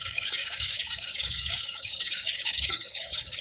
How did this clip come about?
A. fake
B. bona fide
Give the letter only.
A